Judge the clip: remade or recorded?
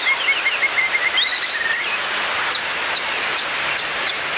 recorded